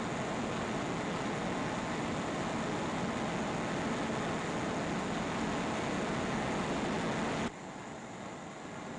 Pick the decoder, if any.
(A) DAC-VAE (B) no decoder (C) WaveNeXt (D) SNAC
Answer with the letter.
B